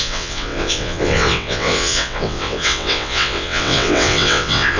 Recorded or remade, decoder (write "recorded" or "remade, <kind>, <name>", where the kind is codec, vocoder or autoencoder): remade, vocoder, WaveNeXt